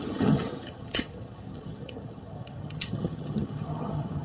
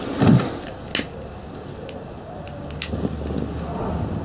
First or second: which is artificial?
first